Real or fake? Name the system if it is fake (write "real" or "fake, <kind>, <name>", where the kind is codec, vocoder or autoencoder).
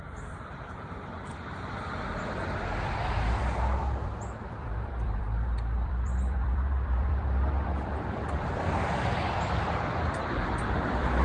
fake, vocoder, BigVGAN v2